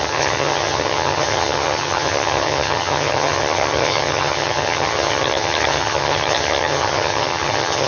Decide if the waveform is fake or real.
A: fake